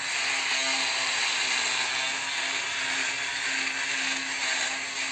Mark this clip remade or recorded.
recorded